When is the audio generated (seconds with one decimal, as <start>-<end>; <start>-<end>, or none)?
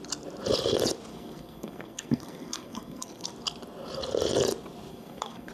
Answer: 1.1-3.3; 4.9-5.5